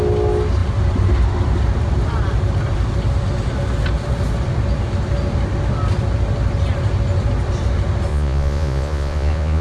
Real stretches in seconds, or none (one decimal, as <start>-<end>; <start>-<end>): 0.0-8.1